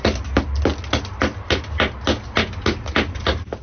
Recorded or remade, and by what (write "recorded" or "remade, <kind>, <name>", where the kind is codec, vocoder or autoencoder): recorded